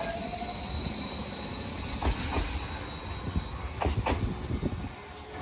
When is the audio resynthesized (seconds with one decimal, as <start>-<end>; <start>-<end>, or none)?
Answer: none